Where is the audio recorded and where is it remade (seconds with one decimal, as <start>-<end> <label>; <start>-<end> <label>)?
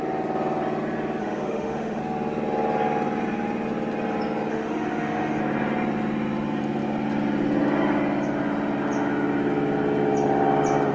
0.0-1.2 recorded; 1.2-2.0 remade; 2.0-4.5 recorded; 4.5-5.4 remade; 5.4-10.9 recorded